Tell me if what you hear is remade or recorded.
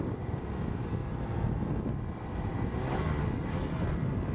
recorded